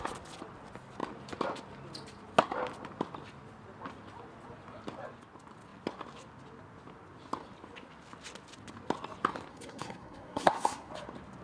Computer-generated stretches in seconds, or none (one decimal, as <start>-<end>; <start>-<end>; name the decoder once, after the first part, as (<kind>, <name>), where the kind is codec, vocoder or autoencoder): 9.5-10.9 (codec, SNAC)